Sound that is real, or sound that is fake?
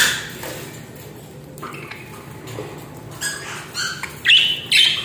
real